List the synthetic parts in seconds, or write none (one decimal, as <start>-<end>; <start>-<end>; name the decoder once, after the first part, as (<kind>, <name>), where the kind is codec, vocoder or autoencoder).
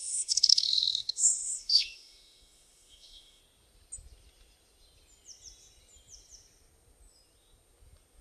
0.0-3.4 (autoencoder, DAC-VAE)